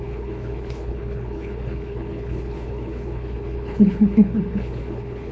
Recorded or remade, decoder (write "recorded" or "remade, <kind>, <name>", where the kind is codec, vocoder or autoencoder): remade, codec, HILCodec